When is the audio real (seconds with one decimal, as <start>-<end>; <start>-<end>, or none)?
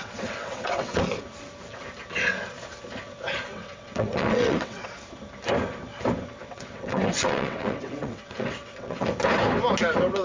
1.0-3.5; 4.9-6.4; 9.1-10.2